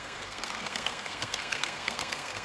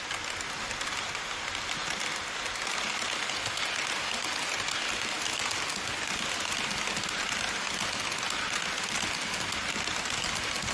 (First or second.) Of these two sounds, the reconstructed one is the first